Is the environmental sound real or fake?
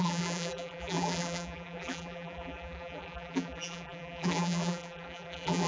fake